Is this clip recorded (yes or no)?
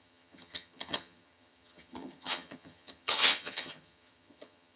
no